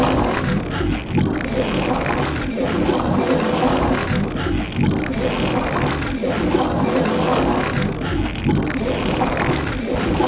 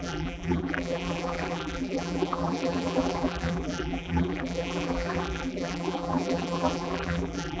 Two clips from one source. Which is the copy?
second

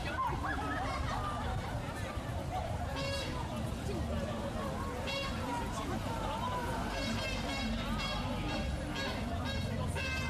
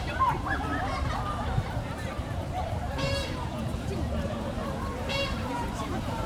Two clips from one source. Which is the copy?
second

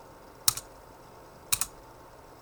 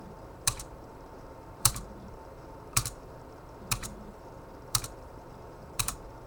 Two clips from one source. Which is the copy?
second